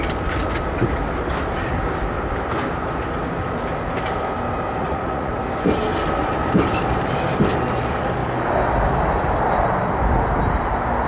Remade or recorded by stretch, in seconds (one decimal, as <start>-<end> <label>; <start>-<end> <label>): 0.0-4.8 recorded; 4.8-5.3 remade; 5.3-11.1 recorded